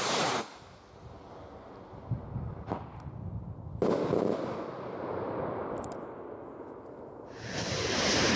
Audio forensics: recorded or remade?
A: recorded